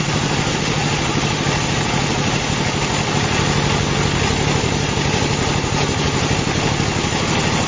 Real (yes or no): yes